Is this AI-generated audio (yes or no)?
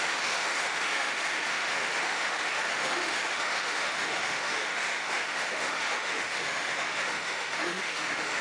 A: yes